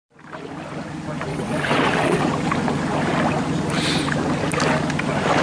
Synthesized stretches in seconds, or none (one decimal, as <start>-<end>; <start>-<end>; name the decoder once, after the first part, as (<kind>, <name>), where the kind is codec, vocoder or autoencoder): 1.3-2.2 (vocoder, WaveNeXt)